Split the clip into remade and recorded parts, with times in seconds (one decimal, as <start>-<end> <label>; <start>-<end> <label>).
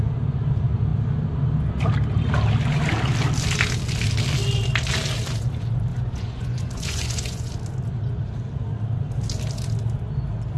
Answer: 0.0-5.9 recorded; 5.9-7.5 remade; 7.5-10.6 recorded